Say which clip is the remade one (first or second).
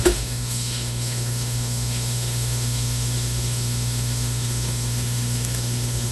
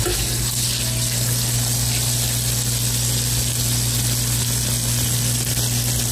first